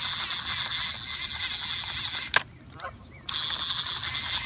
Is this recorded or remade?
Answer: recorded